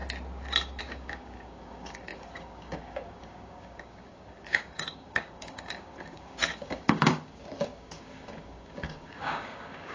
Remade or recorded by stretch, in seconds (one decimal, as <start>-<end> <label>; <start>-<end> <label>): 0.0-0.8 recorded; 0.8-9.9 remade